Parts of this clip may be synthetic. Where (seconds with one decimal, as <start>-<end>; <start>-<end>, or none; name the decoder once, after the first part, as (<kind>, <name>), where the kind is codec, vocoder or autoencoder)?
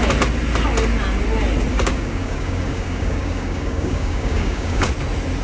1.7-4.9 (codec, DAC)